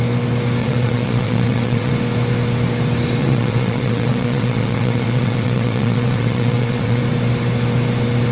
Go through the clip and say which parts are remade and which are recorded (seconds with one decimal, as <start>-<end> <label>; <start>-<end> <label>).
0.0-0.6 recorded; 0.6-1.9 remade; 1.9-3.2 recorded; 3.2-7.0 remade; 7.0-8.3 recorded